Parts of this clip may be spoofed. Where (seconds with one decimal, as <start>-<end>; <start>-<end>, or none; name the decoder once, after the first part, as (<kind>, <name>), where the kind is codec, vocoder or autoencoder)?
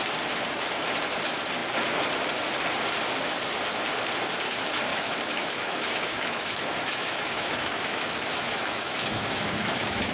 4.9-10.1 (autoencoder, DAC-VAE)